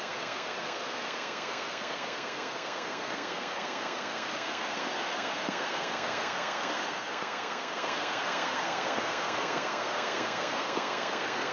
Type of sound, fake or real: fake